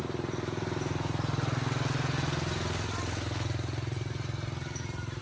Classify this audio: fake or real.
real